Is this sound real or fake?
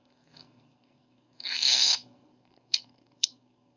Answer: fake